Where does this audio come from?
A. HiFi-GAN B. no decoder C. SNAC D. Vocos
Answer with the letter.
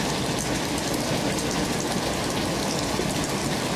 B